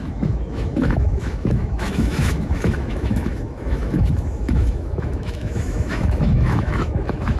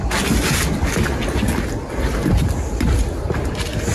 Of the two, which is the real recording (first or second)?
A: second